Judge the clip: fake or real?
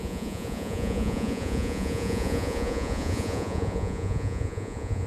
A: fake